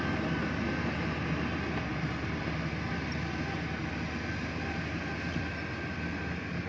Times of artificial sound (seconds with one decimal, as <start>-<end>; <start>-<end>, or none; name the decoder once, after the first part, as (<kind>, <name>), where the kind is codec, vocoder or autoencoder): none